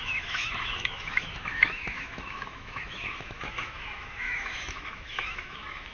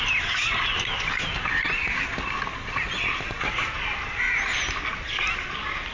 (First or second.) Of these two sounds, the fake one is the first